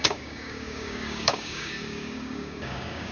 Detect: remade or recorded remade